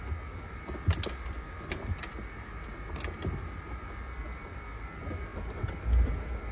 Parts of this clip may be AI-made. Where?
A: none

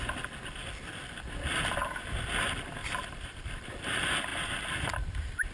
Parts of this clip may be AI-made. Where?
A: 2.8-3.8 (vocoder, BigVGAN v2); 4.3-5.5